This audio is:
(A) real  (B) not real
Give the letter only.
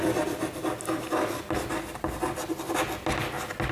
A